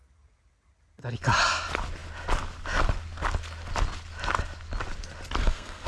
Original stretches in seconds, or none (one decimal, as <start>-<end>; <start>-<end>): 0.0-5.4